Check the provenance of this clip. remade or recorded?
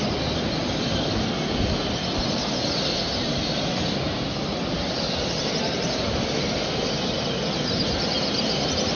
recorded